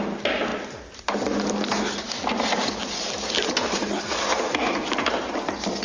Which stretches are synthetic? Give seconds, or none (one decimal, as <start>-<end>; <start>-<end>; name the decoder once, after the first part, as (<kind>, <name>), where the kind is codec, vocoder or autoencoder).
none